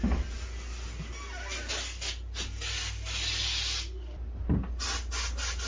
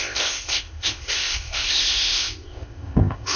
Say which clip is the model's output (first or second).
second